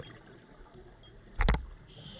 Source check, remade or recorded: recorded